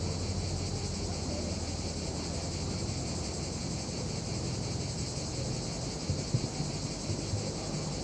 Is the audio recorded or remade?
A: recorded